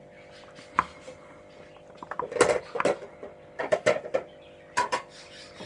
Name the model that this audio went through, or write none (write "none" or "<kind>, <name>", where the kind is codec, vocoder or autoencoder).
none